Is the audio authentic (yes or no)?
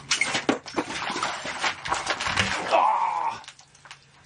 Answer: yes